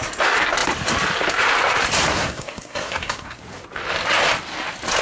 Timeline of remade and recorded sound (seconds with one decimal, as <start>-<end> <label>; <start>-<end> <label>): 0.0-2.1 recorded; 2.1-3.4 remade; 3.4-5.0 recorded